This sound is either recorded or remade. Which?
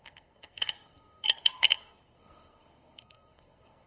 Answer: remade